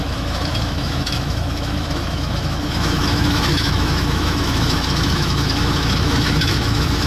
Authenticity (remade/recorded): remade